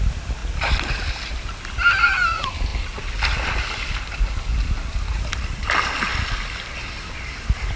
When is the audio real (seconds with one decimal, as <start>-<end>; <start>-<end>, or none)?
0.0-7.8